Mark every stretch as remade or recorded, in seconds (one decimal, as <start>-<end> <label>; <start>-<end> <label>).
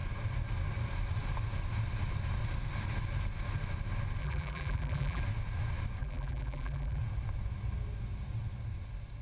0.0-4.2 recorded; 4.2-5.2 remade; 5.2-6.0 recorded; 6.0-7.0 remade; 7.0-9.2 recorded